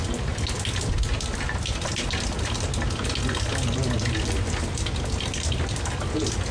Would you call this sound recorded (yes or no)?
yes